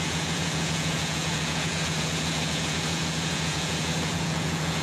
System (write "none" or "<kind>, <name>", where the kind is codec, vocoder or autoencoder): vocoder, Vocos